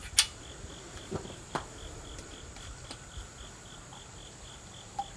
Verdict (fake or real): real